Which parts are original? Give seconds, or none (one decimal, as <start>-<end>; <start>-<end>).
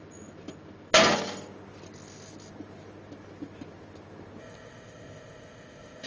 0.0-4.4